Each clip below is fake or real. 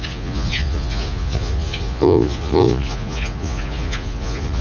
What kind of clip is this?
fake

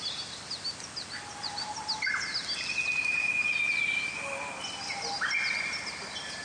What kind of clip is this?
real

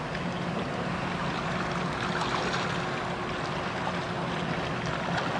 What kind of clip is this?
real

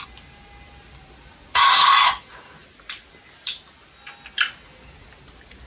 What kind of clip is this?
real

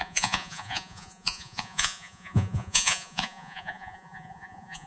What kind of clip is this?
fake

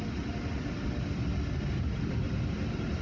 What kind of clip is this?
real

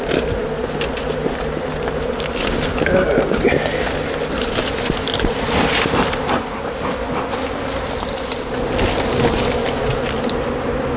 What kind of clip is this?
real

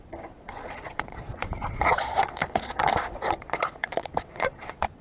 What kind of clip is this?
fake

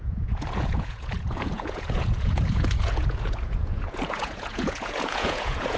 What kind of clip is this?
fake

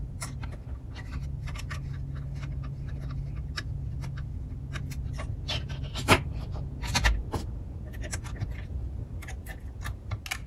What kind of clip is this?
real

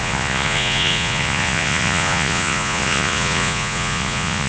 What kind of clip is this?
fake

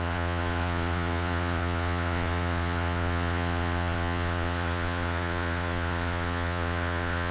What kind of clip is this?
fake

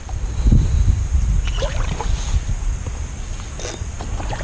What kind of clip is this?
real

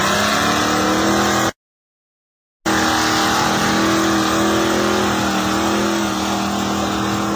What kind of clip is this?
real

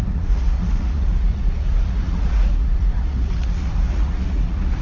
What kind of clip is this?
fake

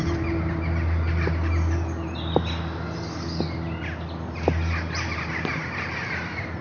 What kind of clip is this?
real